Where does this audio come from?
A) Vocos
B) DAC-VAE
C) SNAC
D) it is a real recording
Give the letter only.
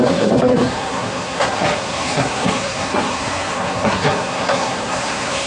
C